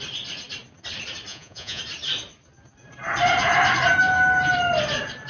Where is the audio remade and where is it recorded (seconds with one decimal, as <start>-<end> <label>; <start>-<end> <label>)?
0.0-1.3 recorded; 1.3-1.8 remade; 1.8-5.3 recorded